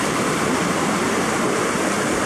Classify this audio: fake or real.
real